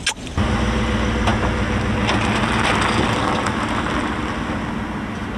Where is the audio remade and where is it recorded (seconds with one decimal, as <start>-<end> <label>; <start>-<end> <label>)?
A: 0.0-5.4 recorded